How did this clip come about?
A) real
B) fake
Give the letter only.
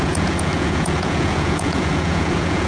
B